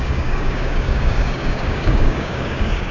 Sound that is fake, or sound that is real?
fake